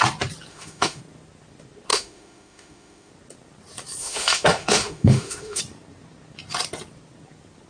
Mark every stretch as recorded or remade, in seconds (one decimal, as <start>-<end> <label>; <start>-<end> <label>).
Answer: 0.0-0.5 recorded; 0.5-1.0 remade; 1.0-1.9 recorded; 1.9-3.1 remade; 3.1-4.0 recorded; 4.0-5.6 remade; 5.6-7.7 recorded